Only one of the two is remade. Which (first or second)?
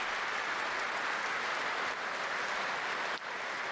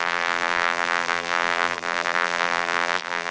second